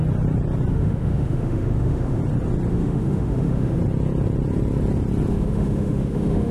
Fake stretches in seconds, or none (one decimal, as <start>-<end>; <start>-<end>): 0.7-2.2; 2.7-3.8; 5.3-6.5